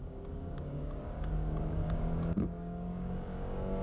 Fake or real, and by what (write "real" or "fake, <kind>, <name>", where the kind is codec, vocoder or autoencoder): fake, codec, DAC